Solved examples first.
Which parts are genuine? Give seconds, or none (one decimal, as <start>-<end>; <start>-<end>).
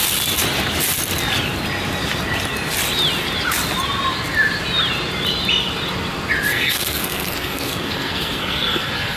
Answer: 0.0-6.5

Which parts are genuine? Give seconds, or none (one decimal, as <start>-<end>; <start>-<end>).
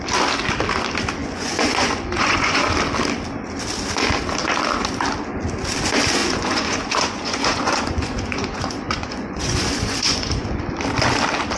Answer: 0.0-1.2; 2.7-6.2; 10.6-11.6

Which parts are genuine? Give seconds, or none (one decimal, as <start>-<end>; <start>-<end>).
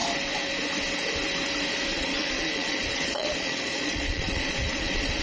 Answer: 0.0-1.9